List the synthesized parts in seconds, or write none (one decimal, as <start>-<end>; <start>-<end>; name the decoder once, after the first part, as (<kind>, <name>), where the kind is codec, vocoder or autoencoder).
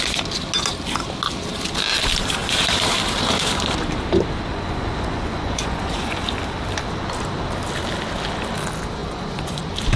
4.5-6.2 (vocoder, Vocos); 9.0-9.6